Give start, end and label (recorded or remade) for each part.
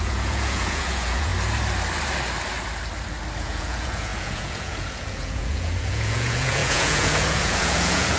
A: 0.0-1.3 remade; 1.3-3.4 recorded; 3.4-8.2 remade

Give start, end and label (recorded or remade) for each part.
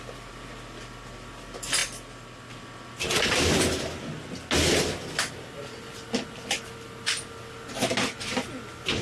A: 0.0-9.0 recorded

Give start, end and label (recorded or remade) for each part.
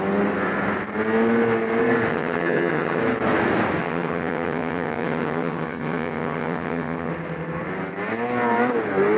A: 0.0-2.1 recorded; 2.1-3.0 remade; 3.0-3.8 recorded; 3.8-7.1 remade; 7.1-9.2 recorded